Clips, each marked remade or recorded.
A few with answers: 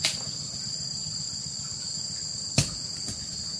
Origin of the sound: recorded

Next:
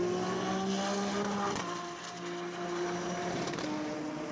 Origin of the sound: recorded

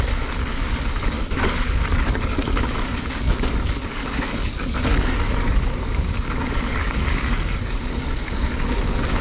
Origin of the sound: remade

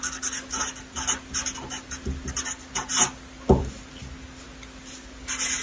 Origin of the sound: recorded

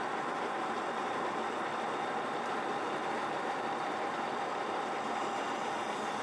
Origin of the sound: recorded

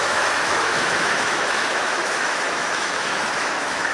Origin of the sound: remade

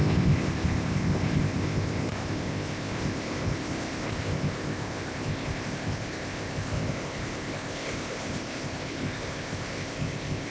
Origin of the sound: remade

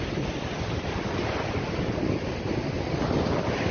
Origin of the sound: recorded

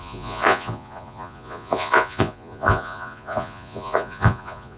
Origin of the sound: remade